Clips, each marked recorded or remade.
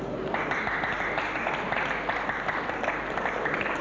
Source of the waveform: recorded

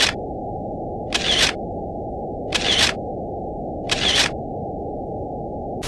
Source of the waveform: recorded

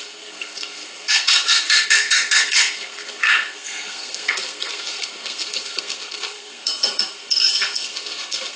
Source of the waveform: remade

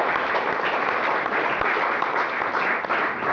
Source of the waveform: recorded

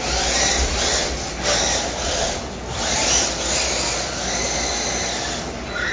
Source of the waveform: recorded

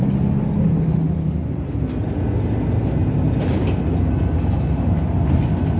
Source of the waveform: recorded